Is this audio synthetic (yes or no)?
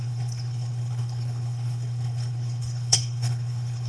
yes